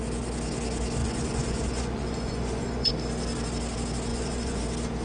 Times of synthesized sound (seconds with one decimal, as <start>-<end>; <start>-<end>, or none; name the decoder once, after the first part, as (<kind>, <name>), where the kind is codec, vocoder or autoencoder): 1.0-2.9 (vocoder, Vocos); 4.1-4.6